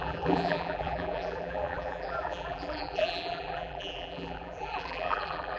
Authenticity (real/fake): fake